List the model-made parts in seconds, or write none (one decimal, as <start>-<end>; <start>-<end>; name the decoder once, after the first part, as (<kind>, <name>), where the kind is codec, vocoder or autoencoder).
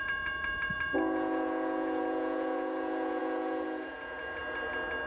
0.0-4.4 (vocoder, Vocos)